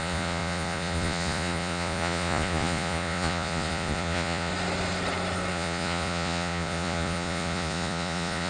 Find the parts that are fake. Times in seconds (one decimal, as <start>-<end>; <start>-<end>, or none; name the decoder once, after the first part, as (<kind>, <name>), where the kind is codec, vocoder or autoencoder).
0.0-4.5 (vocoder, Vocos); 5.5-8.5